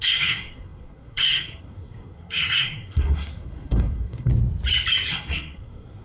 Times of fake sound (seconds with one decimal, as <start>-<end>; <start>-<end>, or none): 0.0-4.3; 5.1-6.0